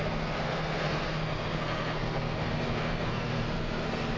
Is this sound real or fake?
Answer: fake